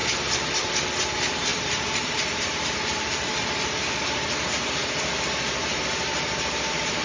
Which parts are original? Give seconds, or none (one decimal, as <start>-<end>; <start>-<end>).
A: 0.0-1.5; 4.9-7.0